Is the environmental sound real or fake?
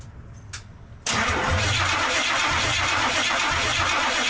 real